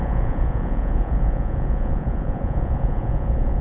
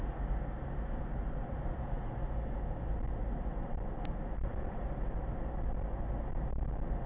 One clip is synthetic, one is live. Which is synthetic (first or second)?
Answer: first